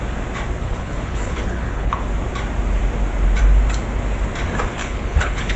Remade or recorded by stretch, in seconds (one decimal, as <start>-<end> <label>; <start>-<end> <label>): 0.0-0.6 recorded; 0.6-2.0 remade; 2.0-4.8 recorded; 4.8-5.6 remade